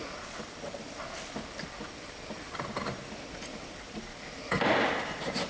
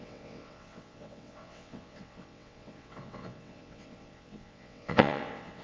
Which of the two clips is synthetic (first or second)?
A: second